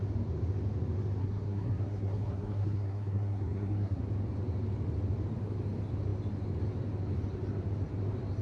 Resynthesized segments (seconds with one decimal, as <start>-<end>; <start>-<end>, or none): 1.2-4.0